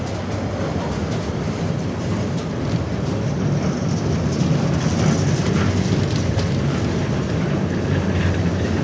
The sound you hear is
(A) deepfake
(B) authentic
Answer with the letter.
B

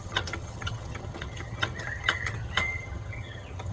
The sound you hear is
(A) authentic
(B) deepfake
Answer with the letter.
B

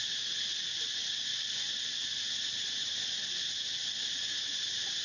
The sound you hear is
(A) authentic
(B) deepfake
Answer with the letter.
A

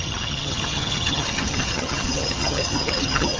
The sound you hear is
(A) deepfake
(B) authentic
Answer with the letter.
A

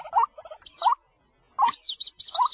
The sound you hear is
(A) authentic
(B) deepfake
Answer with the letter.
A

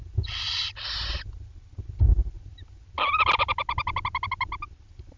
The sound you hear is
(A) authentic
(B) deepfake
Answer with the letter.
A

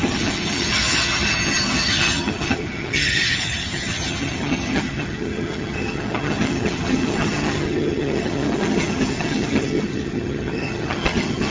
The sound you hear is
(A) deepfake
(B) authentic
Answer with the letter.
A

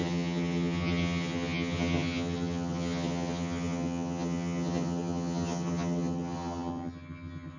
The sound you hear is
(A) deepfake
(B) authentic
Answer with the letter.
A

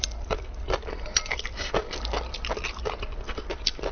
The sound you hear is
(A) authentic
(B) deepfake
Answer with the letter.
A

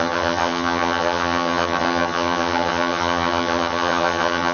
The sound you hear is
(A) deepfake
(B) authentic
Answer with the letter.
A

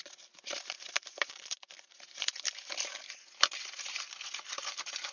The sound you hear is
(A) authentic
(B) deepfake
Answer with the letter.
A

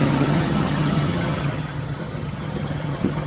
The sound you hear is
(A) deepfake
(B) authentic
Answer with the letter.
A